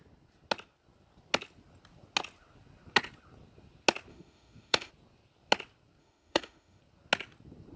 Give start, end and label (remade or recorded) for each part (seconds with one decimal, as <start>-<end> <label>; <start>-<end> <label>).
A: 0.0-4.1 recorded; 4.1-4.9 remade; 4.9-6.0 recorded; 6.0-6.8 remade; 6.8-7.8 recorded